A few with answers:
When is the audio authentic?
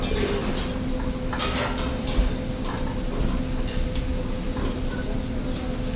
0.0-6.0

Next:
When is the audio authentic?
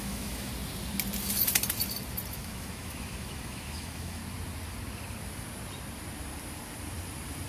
0.5-2.3; 4.2-7.5